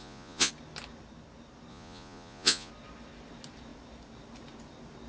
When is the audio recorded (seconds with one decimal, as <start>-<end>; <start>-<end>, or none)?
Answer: 0.5-1.7; 2.7-5.1